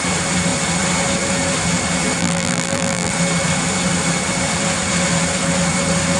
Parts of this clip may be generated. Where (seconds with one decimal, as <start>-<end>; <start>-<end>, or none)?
2.2-3.1